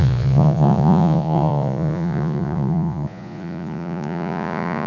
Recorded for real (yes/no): no